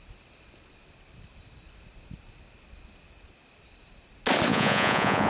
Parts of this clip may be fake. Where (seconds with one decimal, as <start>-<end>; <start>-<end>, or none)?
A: 4.5-5.3